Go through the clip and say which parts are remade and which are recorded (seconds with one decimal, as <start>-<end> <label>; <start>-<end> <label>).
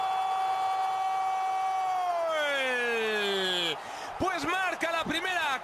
0.0-5.6 recorded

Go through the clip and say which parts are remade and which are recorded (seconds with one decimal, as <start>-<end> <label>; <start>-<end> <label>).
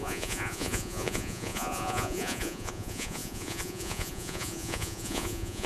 0.0-5.7 remade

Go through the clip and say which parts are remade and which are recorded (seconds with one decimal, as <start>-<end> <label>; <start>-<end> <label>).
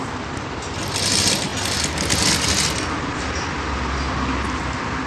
0.0-5.1 recorded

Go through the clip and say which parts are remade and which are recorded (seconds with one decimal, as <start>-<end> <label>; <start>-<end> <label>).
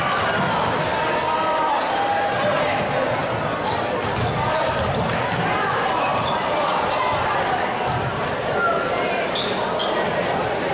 0.0-10.7 recorded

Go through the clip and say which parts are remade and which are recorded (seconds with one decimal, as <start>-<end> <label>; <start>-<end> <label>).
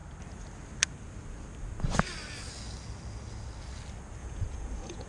0.0-4.2 recorded; 4.2-5.1 remade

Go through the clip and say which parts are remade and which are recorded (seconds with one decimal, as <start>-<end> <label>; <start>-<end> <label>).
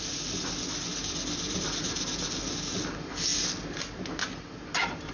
0.0-5.1 recorded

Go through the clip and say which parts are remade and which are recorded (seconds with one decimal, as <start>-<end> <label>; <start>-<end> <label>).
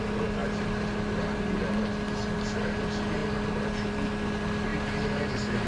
0.0-5.7 recorded